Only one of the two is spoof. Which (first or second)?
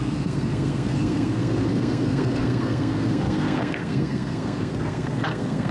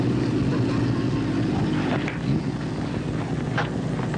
first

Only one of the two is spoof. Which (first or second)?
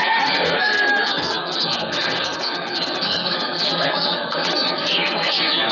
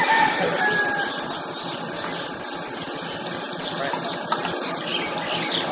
first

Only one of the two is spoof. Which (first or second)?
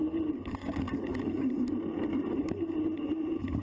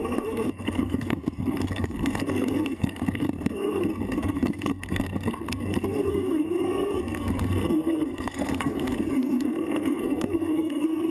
second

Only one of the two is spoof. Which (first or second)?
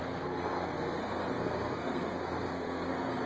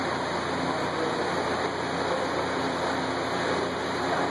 first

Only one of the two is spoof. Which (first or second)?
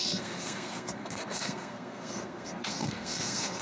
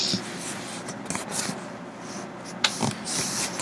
first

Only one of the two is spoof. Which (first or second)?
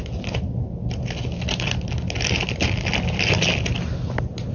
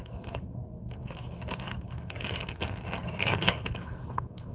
second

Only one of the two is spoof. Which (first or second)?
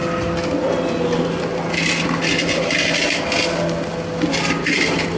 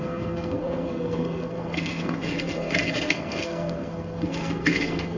second